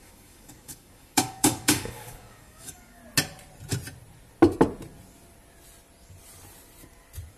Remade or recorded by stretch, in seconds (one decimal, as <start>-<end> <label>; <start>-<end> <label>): 0.0-3.0 remade; 3.0-7.4 recorded

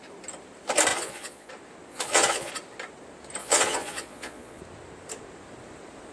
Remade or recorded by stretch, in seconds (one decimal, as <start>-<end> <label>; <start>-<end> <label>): 0.0-0.9 recorded; 0.9-1.5 remade; 1.5-1.9 recorded; 1.9-2.5 remade; 2.5-3.4 recorded; 3.4-4.6 remade; 4.6-6.1 recorded

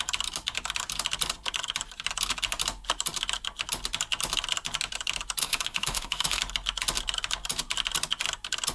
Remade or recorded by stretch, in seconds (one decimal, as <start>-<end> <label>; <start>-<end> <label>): 0.0-5.4 recorded; 5.4-6.4 remade; 6.4-8.7 recorded

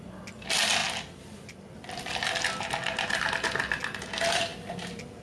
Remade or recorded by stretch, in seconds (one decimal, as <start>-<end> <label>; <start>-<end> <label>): 0.0-5.2 recorded

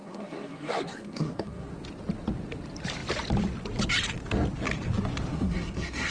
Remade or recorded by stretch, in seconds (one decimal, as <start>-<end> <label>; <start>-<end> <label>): 0.0-1.7 remade; 1.7-5.3 recorded; 5.3-6.1 remade

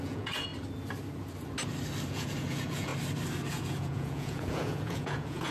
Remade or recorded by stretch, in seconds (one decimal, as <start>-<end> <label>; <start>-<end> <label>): 0.0-0.5 remade; 0.5-2.1 recorded; 2.1-2.9 remade; 2.9-3.5 recorded; 3.5-5.5 remade

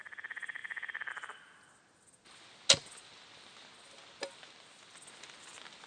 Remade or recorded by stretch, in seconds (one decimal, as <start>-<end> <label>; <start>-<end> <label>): 0.0-5.9 recorded